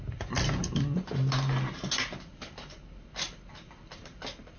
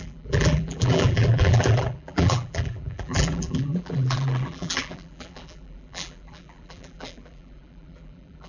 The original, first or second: first